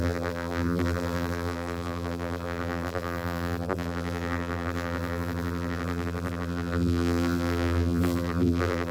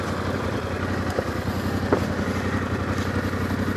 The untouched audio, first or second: second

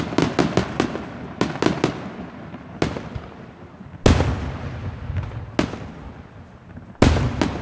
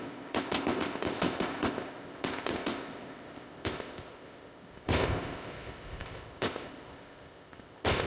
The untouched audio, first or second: first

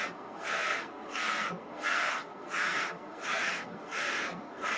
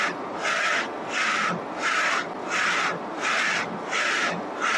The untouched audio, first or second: second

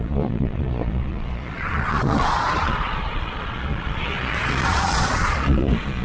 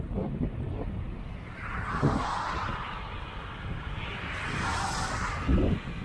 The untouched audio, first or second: second